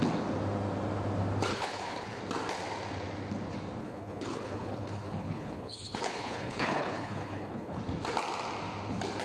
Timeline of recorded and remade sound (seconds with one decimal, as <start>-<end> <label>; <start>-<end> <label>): 0.0-1.5 recorded; 1.5-2.2 remade; 2.2-3.8 recorded; 3.8-7.8 remade; 7.8-9.2 recorded